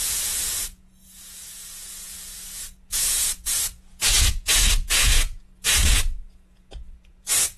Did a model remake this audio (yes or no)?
yes